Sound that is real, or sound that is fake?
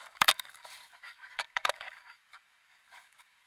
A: fake